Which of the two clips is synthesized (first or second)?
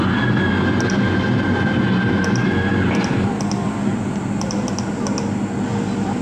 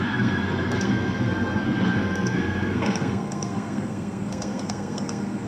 second